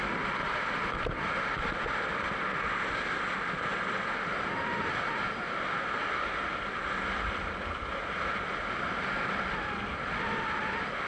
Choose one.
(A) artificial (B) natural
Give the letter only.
B